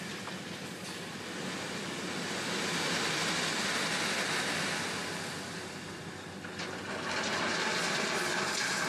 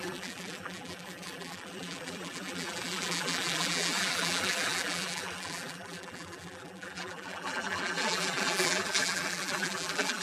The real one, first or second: first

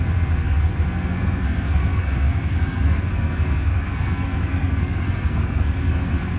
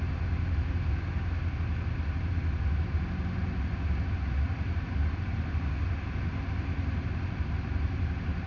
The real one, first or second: second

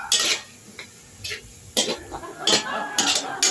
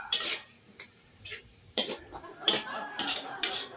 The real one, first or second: first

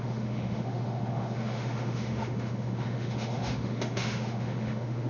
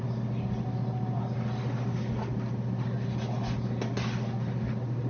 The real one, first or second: second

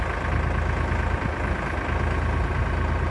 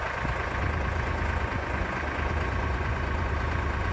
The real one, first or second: first